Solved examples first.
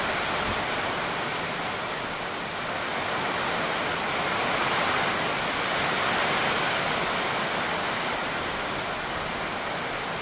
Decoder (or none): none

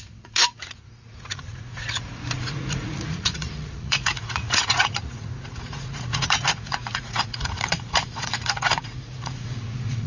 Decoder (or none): vocoder, Vocos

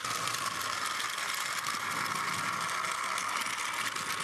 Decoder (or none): none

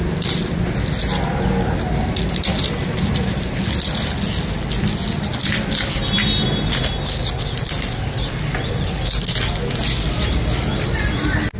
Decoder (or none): none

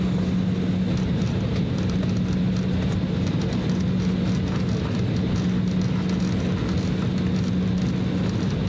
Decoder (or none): none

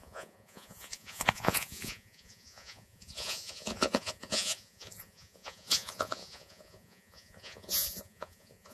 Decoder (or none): vocoder, Vocos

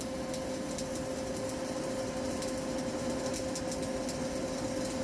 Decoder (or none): none